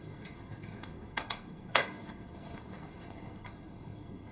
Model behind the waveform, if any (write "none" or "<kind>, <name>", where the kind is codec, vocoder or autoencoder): codec, SNAC